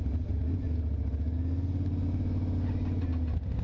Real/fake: real